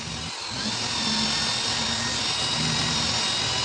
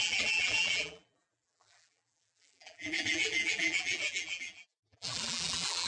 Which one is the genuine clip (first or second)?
first